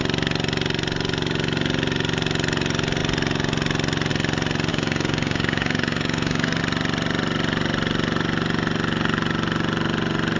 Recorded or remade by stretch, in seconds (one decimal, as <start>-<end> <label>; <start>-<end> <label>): 0.0-4.7 recorded; 4.7-6.6 remade; 6.6-10.4 recorded